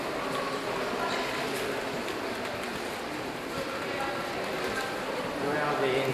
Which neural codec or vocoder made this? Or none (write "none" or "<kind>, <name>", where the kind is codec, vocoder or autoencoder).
none